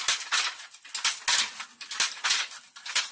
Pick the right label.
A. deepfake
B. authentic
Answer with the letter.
B